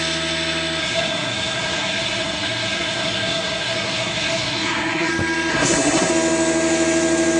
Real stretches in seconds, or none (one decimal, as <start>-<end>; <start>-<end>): 0.0-0.8; 5.1-5.5; 6.1-7.4